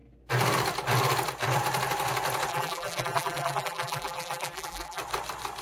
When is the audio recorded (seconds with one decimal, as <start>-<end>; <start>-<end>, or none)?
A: 0.0-2.5; 5.0-5.6

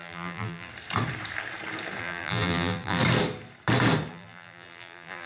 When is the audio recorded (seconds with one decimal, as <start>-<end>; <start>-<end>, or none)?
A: 0.7-2.0; 3.0-4.1

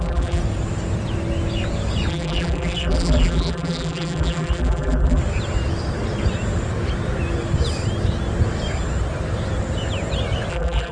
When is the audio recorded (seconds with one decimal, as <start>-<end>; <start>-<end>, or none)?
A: 0.4-2.1; 5.2-10.5

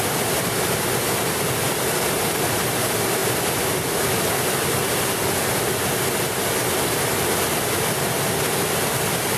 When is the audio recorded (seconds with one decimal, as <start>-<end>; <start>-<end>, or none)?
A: 0.0-9.4

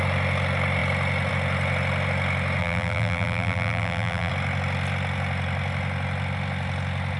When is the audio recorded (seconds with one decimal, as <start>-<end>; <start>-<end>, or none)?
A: 0.0-2.6; 4.3-7.2

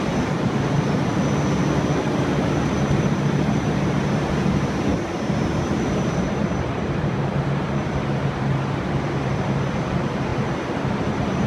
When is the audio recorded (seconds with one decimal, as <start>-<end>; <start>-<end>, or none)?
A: 1.1-2.0; 4.9-5.9; 10.3-10.9

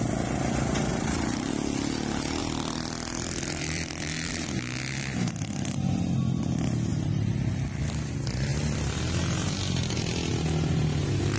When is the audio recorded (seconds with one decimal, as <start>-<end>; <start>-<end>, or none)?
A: 0.0-0.9; 1.5-2.4; 4.3-6.9; 8.1-11.4